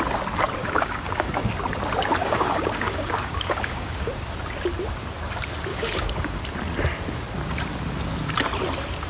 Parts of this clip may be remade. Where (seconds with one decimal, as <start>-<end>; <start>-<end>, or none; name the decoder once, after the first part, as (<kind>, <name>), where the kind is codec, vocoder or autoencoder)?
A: 0.6-1.5 (codec, DAC); 2.2-4.1; 5.7-6.4